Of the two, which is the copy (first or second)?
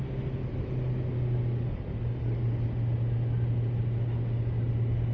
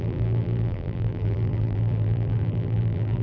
second